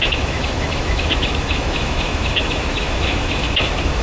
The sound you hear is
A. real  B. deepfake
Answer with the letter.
B